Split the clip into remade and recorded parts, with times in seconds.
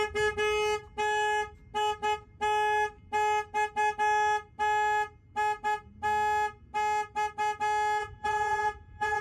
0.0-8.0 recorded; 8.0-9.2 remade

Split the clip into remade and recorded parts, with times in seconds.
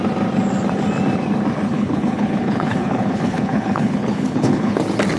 0.0-1.7 recorded; 1.7-4.8 remade; 4.8-5.2 recorded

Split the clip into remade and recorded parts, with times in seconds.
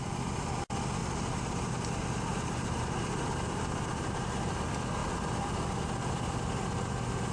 0.0-1.0 recorded; 1.0-1.7 remade; 1.7-2.3 recorded; 2.3-4.6 remade; 4.6-7.3 recorded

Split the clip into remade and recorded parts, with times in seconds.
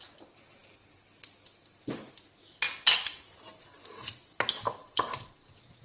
0.0-4.8 recorded; 4.8-5.8 remade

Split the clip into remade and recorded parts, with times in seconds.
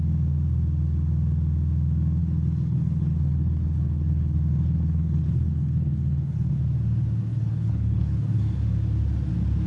0.0-2.2 recorded; 2.2-6.5 remade; 6.5-7.3 recorded; 7.3-8.4 remade; 8.4-9.7 recorded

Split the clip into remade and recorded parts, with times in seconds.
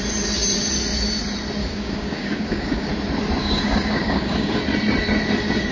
0.0-1.6 recorded; 1.6-2.9 remade; 2.9-3.4 recorded; 3.4-4.6 remade; 4.6-5.7 recorded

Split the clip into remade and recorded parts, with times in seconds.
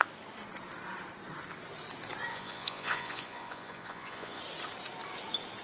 0.0-2.3 recorded; 2.3-4.4 remade; 4.4-5.6 recorded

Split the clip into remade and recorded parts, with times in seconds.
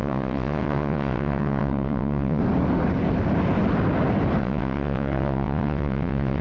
0.0-2.4 remade; 2.4-4.4 recorded; 4.4-6.4 remade